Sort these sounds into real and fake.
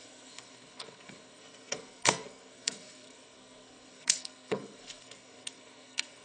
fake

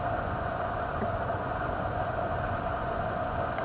fake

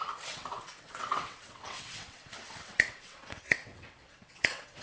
fake